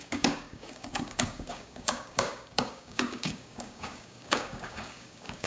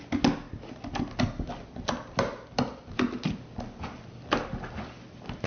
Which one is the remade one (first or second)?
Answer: first